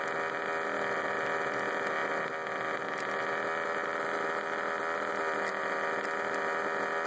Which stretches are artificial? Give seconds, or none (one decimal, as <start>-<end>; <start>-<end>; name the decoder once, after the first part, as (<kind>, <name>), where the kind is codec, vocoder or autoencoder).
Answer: none